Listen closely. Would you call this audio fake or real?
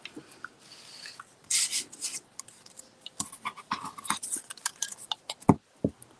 real